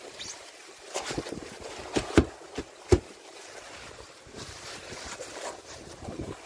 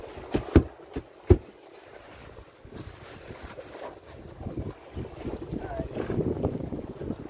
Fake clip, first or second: first